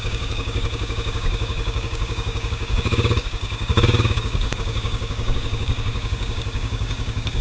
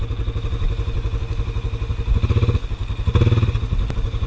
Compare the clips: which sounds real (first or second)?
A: second